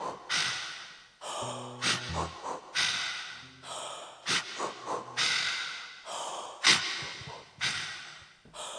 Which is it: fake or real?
real